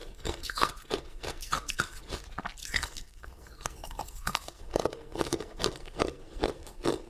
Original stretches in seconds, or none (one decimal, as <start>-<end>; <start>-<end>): 2.2-2.6